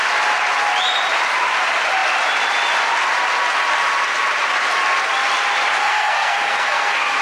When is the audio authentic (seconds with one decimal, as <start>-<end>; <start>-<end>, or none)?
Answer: 0.0-5.8